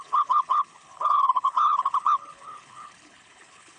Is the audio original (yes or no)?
no